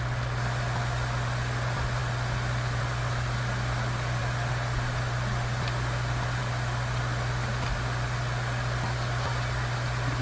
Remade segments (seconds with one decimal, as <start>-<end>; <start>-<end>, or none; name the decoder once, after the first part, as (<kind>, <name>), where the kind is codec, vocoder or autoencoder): none